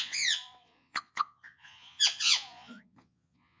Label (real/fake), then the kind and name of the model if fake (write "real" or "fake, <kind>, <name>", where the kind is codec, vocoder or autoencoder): fake, vocoder, Vocos